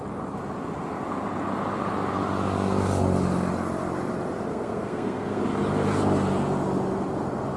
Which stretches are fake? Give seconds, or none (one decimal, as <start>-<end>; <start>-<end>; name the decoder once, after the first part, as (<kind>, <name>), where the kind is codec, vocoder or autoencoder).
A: 4.5-5.4 (codec, SNAC)